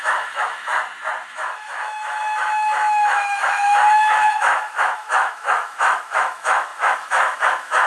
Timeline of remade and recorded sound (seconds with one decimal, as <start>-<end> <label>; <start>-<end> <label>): 0.0-0.7 remade; 0.7-1.3 recorded; 1.3-7.9 remade